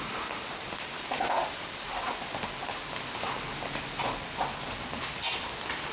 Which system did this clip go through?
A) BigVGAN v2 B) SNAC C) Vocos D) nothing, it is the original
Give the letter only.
D